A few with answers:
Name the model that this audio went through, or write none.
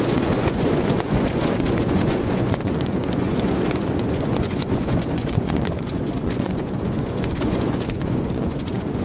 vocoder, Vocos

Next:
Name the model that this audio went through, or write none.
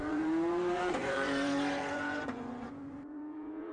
vocoder, Vocos